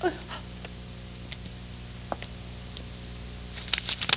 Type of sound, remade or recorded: recorded